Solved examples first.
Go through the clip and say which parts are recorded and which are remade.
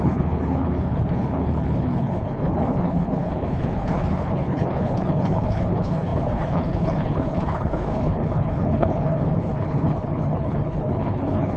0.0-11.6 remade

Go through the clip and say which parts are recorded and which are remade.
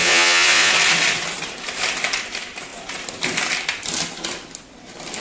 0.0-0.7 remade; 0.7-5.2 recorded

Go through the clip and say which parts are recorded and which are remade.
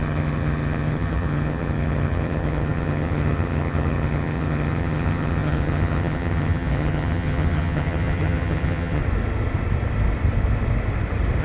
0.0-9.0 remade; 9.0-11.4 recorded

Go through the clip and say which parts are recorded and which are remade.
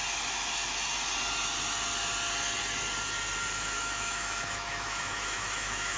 0.0-3.6 recorded; 3.6-6.0 remade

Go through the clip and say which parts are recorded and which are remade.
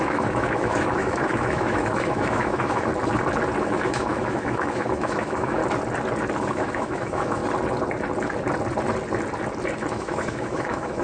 0.0-2.9 remade; 2.9-3.6 recorded; 3.6-5.6 remade; 5.6-6.5 recorded; 6.5-7.4 remade; 7.4-9.9 recorded; 9.9-11.0 remade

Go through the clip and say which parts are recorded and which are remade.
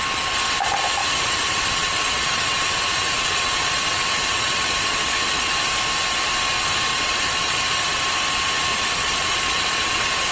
0.0-1.0 recorded; 1.0-5.5 remade; 5.5-6.9 recorded; 6.9-8.0 remade; 8.0-8.7 recorded; 8.7-10.3 remade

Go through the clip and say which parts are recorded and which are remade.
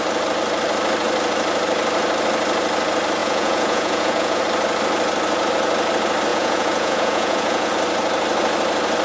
0.0-3.2 recorded; 3.2-4.4 remade; 4.4-6.3 recorded; 6.3-7.7 remade; 7.7-9.0 recorded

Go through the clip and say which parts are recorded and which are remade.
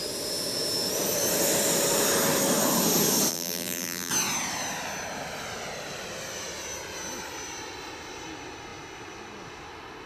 0.0-3.3 recorded; 3.3-4.1 remade; 4.1-10.1 recorded